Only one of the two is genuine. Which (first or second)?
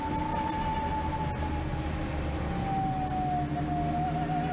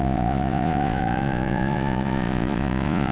first